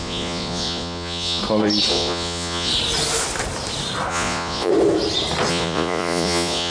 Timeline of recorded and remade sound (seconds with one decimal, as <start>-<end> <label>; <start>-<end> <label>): 0.0-1.4 remade; 1.4-1.9 recorded; 1.9-2.7 remade; 2.7-4.1 recorded; 4.1-4.7 remade; 4.7-5.5 recorded; 5.5-6.7 remade